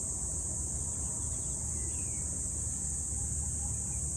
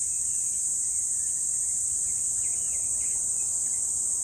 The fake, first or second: second